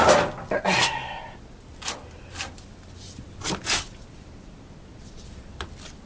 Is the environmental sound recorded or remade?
recorded